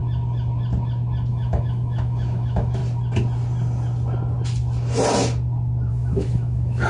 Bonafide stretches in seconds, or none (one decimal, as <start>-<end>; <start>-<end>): 0.0-1.3; 2.8-5.9